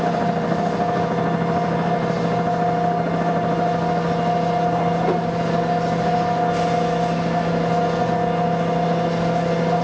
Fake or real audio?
real